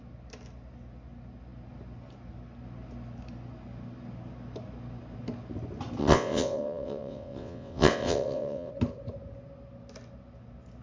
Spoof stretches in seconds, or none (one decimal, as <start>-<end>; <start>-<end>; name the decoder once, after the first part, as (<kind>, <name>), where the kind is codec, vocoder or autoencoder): 6.0-8.7 (vocoder, WaveNeXt)